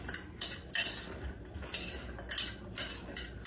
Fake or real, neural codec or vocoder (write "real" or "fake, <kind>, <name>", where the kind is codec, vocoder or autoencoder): real